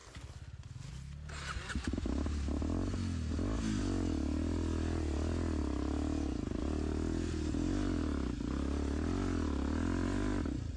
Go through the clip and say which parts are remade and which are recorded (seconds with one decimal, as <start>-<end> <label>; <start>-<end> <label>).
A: 0.0-10.8 recorded

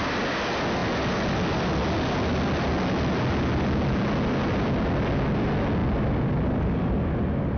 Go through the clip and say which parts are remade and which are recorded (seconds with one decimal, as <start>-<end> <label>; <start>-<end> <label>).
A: 0.0-7.6 recorded

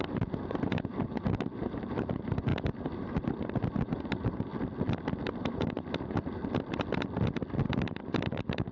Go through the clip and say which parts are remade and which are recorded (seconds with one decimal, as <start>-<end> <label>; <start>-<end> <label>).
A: 0.0-4.5 remade; 4.5-5.4 recorded; 5.4-6.4 remade; 6.4-7.7 recorded; 7.7-8.7 remade